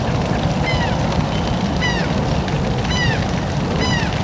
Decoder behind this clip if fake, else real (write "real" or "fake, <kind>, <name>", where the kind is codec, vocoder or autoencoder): real